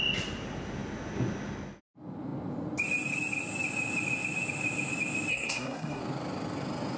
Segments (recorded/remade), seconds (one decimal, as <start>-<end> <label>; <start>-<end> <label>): 0.0-5.3 recorded; 5.3-6.0 remade; 6.0-7.0 recorded